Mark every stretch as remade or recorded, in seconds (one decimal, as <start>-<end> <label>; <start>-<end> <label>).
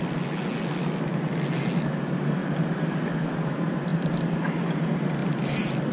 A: 0.0-2.4 recorded; 2.4-3.1 remade; 3.1-5.2 recorded; 5.2-5.9 remade